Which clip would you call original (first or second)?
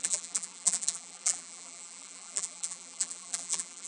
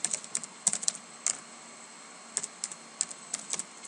second